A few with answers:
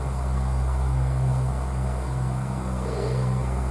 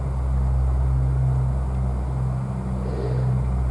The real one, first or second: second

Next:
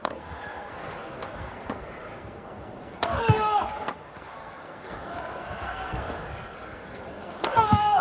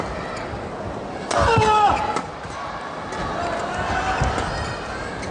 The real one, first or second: second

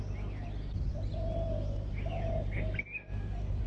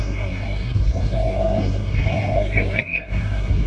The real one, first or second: first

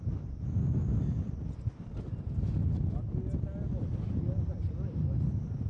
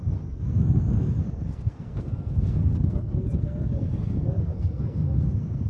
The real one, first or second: first